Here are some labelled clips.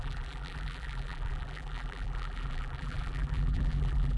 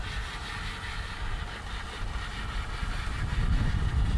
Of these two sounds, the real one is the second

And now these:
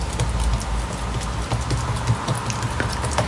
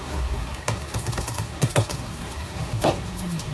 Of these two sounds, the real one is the first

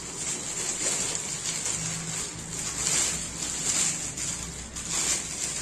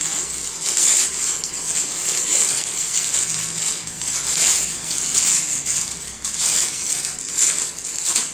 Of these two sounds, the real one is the first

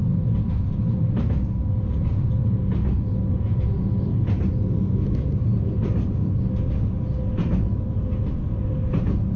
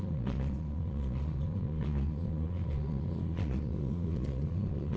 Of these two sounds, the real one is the first